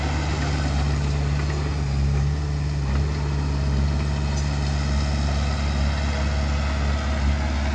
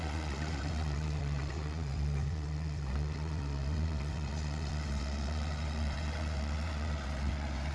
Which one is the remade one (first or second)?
second